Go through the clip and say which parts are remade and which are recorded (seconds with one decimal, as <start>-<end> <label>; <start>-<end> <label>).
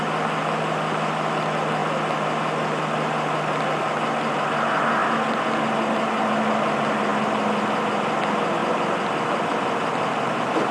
0.0-10.7 recorded